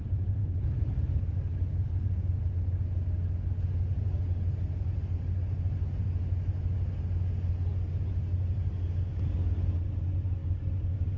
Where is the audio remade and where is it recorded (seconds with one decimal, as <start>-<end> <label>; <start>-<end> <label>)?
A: 0.0-0.4 recorded; 0.4-1.2 remade; 1.2-10.4 recorded; 10.4-11.2 remade